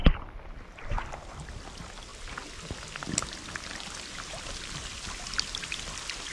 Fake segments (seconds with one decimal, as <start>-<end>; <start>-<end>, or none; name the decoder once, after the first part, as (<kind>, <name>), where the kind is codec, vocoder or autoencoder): 0.0-0.9 (vocoder, BigVGAN v2)